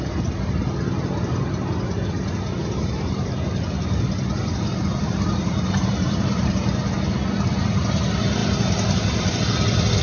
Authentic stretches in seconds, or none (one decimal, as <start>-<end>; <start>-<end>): 0.0-2.6; 4.0-5.0; 6.7-8.4; 9.4-10.0